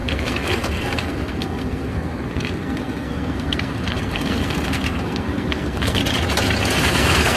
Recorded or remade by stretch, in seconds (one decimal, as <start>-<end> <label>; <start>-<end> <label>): 0.0-6.0 remade; 6.0-6.8 recorded; 6.8-7.4 remade